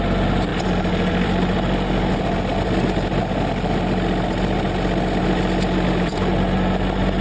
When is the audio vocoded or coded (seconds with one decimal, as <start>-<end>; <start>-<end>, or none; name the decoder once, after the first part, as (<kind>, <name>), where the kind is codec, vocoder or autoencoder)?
none